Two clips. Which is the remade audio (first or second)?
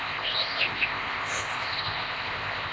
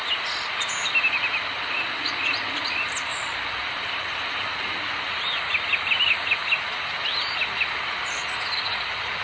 first